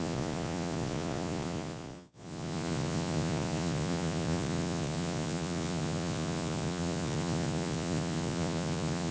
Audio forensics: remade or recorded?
remade